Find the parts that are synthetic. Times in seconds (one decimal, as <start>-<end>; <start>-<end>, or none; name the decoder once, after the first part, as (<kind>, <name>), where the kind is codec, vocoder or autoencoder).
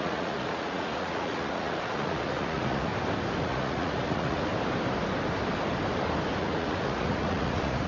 0.0-2.9 (vocoder, Vocos); 3.4-4.5; 6.4-7.9